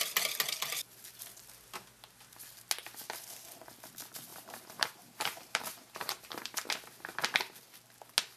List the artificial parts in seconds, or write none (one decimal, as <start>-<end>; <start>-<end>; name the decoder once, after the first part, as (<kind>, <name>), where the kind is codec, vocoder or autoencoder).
4.3-7.2 (vocoder, BigVGAN v2)